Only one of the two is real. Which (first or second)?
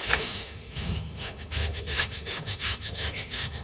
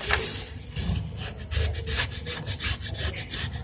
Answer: second